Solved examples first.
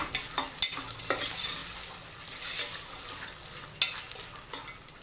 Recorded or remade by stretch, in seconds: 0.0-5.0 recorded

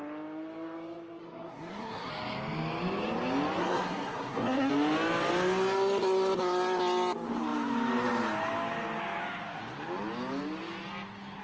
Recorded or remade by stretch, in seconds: 0.0-1.2 recorded; 1.2-2.1 remade; 2.1-3.6 recorded; 3.6-4.7 remade; 4.7-11.4 recorded

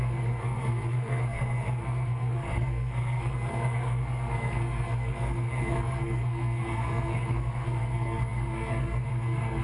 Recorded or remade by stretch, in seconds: 0.0-9.6 remade

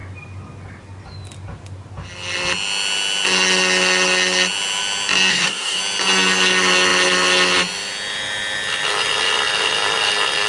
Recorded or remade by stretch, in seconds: 0.0-5.3 recorded; 5.3-5.8 remade; 5.8-10.5 recorded

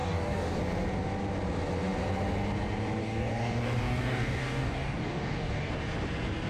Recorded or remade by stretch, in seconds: 0.0-0.6 remade; 0.6-3.0 recorded; 3.0-5.7 remade; 5.7-6.5 recorded

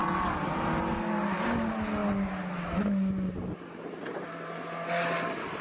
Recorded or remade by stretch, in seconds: 0.0-5.6 recorded

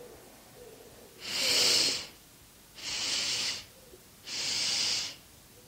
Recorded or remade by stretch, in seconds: 0.0-2.8 recorded; 2.8-3.5 remade; 3.5-5.7 recorded